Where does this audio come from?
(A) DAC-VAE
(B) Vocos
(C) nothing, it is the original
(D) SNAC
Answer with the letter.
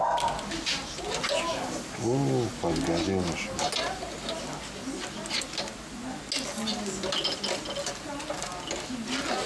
C